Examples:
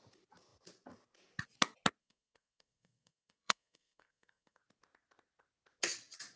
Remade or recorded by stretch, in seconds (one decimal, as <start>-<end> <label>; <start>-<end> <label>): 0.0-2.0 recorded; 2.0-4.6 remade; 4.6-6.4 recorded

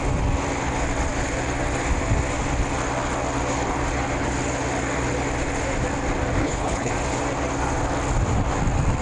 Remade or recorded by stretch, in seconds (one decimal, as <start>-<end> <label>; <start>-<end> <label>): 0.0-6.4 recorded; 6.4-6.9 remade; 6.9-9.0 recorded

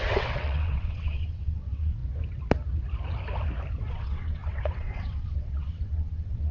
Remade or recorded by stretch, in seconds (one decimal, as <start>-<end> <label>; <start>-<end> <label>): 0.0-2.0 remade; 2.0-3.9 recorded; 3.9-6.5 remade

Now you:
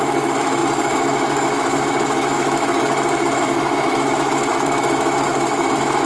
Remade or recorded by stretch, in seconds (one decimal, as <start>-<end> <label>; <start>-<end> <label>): 0.0-6.1 remade

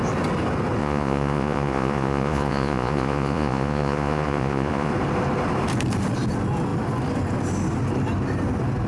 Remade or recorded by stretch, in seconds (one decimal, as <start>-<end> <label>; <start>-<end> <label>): 0.0-0.8 recorded; 0.8-4.9 remade; 4.9-8.9 recorded

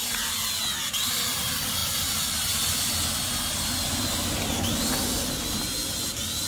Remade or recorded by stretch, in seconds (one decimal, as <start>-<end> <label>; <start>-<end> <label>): 0.0-6.5 recorded

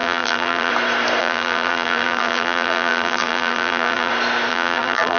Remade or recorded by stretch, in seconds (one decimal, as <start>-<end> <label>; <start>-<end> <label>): 0.0-0.7 remade; 0.7-1.2 recorded; 1.2-4.1 remade; 4.1-4.5 recorded; 4.5-5.2 remade

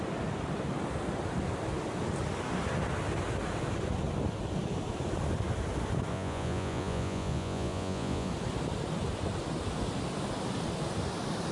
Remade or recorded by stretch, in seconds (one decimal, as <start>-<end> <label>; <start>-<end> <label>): 0.0-6.1 recorded; 6.1-8.3 remade; 8.3-11.5 recorded